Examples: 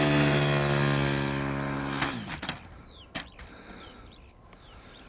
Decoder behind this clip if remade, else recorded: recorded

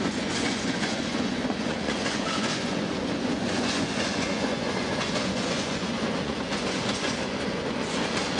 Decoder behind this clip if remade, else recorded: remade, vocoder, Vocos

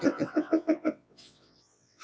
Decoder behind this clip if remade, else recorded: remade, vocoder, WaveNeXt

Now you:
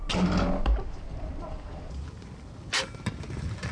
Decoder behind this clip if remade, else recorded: recorded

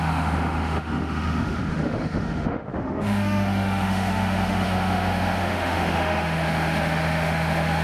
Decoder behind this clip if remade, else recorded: remade, autoencoder, DAC-VAE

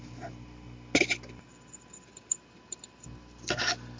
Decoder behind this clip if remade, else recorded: recorded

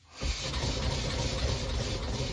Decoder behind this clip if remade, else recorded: recorded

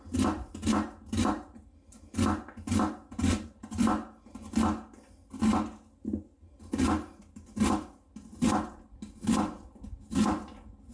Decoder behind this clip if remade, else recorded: recorded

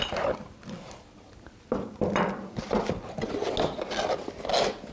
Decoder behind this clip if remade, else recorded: recorded